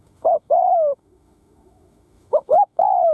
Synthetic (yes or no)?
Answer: yes